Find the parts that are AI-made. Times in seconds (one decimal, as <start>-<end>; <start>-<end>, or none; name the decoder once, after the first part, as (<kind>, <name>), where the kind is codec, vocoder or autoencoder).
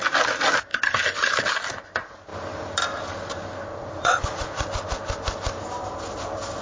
3.7-4.7 (vocoder, Vocos)